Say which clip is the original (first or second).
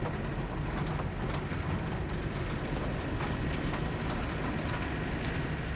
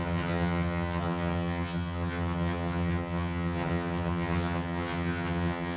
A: first